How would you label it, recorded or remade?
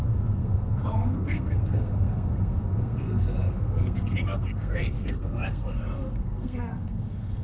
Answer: remade